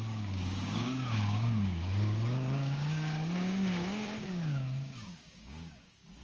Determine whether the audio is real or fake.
fake